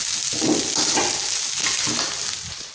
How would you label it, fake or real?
real